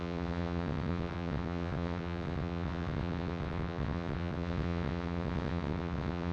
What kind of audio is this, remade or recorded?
remade